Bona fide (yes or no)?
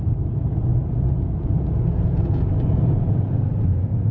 no